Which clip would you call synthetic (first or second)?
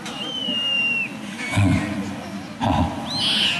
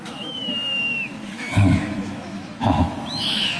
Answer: second